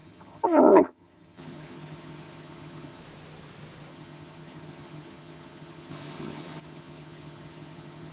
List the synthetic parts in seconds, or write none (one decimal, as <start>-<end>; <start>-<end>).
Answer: 0.0-3.0; 3.9-8.1